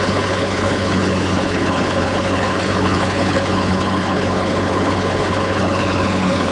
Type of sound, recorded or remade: remade